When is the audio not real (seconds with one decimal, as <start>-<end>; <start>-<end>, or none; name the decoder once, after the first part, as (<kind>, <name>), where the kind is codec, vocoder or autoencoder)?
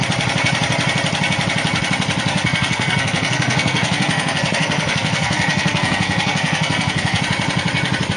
2.3-7.2 (codec, SNAC)